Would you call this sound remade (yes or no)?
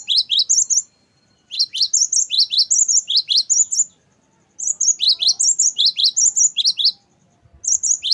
no